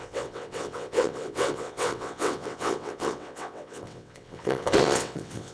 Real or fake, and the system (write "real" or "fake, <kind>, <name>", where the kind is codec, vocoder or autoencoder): fake, vocoder, WaveNeXt